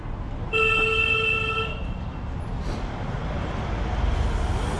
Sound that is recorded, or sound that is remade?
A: recorded